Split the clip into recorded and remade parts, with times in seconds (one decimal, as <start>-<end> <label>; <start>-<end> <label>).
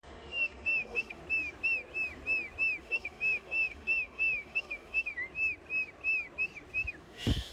0.0-1.2 remade; 1.2-2.8 recorded; 2.8-5.1 remade; 5.1-7.0 recorded; 7.0-7.5 remade